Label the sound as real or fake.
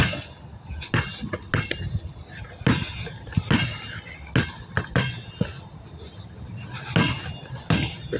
real